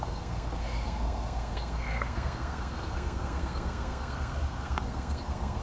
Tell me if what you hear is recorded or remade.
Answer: remade